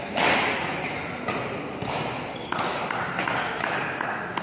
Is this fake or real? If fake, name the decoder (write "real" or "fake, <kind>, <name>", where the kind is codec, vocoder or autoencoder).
real